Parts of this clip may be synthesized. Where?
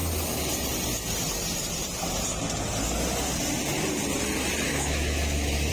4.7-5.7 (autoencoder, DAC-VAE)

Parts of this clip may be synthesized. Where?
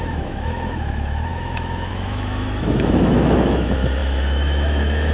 0.0-5.1 (autoencoder, DAC-VAE)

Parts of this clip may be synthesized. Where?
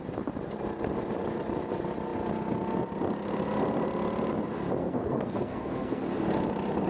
4.8-6.0 (codec, SNAC)